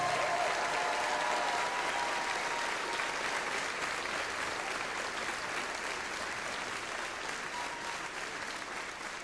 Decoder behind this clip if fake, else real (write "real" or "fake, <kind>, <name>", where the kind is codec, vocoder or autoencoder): real